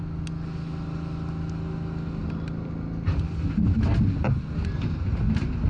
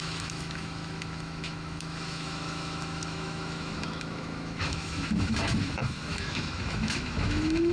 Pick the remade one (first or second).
second